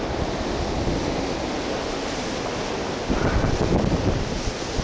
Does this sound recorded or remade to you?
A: recorded